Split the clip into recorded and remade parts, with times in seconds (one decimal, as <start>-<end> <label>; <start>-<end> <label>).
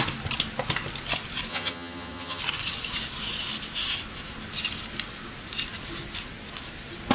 0.0-1.5 recorded; 1.5-2.4 remade; 2.4-7.1 recorded